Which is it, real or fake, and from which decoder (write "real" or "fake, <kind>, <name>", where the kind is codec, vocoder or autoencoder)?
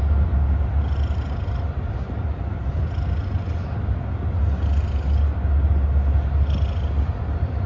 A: real